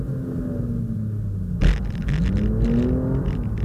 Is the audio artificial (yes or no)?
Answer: no